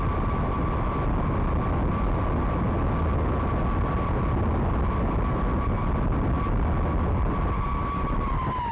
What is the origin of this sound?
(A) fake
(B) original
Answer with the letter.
B